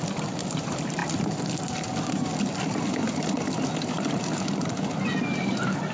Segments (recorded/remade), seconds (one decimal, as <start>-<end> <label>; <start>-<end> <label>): 0.0-5.9 recorded

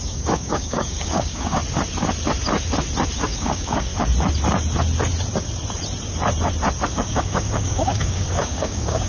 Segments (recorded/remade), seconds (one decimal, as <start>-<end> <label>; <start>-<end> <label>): 0.0-1.6 remade; 1.6-3.2 recorded; 3.2-3.9 remade; 3.9-6.9 recorded; 6.9-9.1 remade

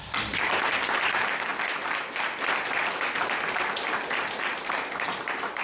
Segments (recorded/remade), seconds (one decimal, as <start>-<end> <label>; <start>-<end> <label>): 0.0-5.6 recorded

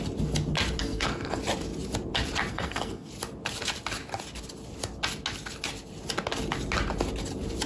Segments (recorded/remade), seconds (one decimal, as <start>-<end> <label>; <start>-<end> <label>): 0.0-0.8 recorded; 0.8-1.4 remade; 1.4-2.5 recorded; 2.5-3.1 remade; 3.1-7.7 recorded

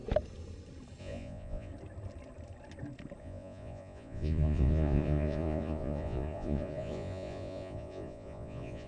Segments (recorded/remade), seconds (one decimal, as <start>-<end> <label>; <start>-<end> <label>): 0.0-1.0 recorded; 1.0-1.7 remade; 1.7-3.2 recorded; 3.2-8.9 remade

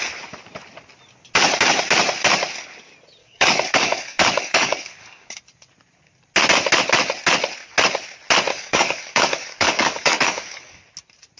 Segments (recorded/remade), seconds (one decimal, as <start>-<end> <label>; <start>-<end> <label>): 0.0-3.2 recorded; 3.2-5.4 remade; 5.4-8.5 recorded; 8.5-10.8 remade; 10.8-11.4 recorded

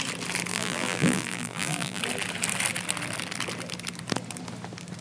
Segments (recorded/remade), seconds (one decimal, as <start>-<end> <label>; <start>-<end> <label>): 0.0-0.5 recorded; 0.5-2.0 remade; 2.0-5.0 recorded